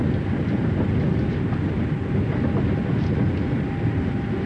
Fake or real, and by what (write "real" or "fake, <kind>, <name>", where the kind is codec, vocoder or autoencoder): real